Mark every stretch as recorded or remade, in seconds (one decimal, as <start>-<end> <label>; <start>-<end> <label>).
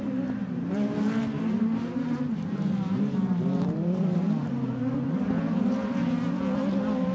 0.0-0.4 recorded; 0.4-4.7 remade; 4.7-7.1 recorded